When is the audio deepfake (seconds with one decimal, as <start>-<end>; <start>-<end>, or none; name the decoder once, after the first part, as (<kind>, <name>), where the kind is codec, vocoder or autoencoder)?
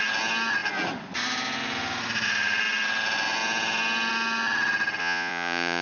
5.0-5.8 (vocoder, Vocos)